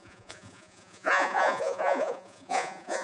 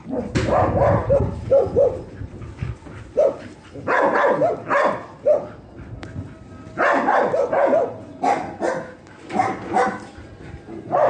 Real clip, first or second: second